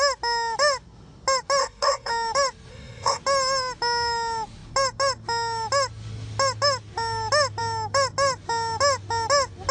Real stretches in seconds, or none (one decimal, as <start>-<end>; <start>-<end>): 0.0-1.6; 2.1-2.7; 3.2-9.7